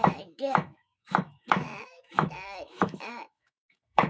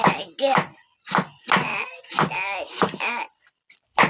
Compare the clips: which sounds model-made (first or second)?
first